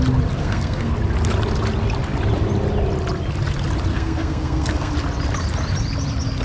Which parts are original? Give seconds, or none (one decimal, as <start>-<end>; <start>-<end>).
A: 0.0-0.4; 0.9-3.9; 4.9-6.4